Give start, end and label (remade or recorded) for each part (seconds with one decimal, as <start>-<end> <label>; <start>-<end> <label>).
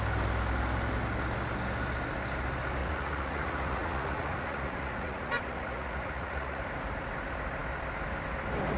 0.0-2.8 recorded; 2.8-6.6 remade; 6.6-8.8 recorded